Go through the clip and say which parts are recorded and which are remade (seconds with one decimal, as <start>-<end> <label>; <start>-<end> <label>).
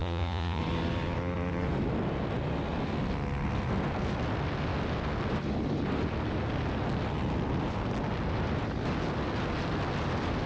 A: 0.0-0.6 remade; 0.6-10.5 recorded